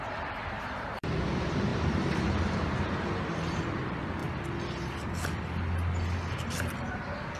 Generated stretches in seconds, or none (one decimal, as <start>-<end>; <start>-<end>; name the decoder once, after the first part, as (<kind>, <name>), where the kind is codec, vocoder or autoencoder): 0.0-4.2 (vocoder, BigVGAN v2)